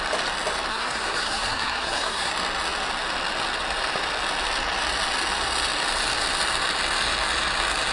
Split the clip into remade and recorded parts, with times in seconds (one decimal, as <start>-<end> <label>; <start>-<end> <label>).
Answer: 0.0-0.7 recorded; 0.7-2.3 remade; 2.3-7.9 recorded

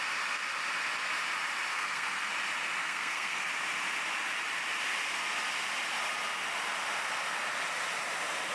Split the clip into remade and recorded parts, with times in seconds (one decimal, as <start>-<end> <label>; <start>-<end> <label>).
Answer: 0.0-1.7 recorded; 1.7-2.3 remade; 2.3-2.8 recorded; 2.8-3.5 remade; 3.5-8.5 recorded